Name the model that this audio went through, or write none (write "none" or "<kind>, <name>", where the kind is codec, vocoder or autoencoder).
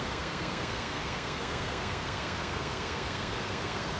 codec, SNAC